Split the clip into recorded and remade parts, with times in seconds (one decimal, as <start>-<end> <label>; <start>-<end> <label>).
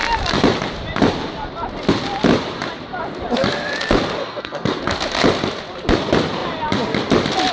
0.0-4.2 recorded; 4.2-4.8 remade; 4.8-7.5 recorded